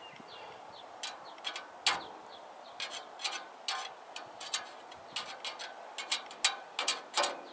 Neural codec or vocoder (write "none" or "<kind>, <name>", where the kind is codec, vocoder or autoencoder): none